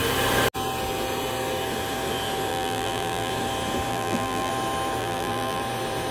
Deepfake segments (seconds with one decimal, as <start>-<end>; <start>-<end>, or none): 2.5-3.3; 3.9-4.5; 5.0-5.6